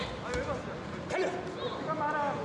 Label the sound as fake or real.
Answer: real